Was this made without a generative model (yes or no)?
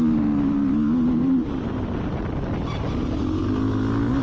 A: yes